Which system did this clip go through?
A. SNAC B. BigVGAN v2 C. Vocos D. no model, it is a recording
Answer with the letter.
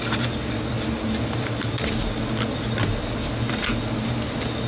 D